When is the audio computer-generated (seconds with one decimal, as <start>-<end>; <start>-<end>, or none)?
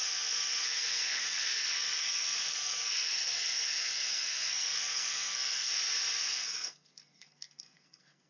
0.0-5.7; 6.2-8.3